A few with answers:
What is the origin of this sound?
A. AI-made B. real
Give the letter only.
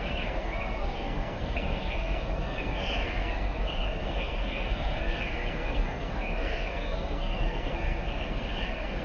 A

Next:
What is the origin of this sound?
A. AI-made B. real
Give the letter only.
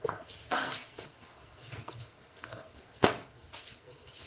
A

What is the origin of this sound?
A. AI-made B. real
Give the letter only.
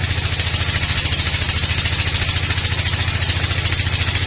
B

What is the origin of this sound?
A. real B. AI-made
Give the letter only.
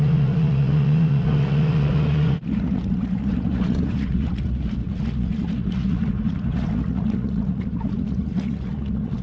B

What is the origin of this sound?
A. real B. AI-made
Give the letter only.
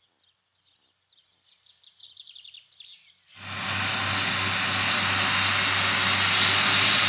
A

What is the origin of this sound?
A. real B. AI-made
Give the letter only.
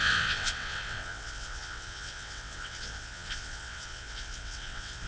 B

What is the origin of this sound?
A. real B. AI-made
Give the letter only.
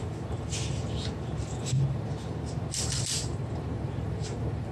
B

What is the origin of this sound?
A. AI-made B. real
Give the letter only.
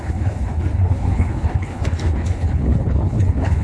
A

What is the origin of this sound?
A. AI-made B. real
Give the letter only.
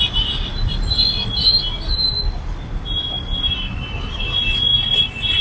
B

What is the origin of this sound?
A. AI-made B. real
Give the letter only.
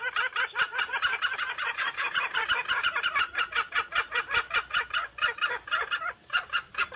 A